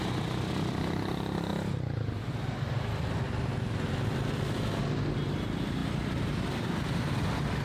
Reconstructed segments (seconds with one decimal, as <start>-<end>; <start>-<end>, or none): none